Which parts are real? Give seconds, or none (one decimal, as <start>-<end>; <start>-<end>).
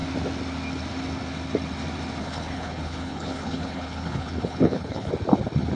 0.0-2.2; 5.1-5.8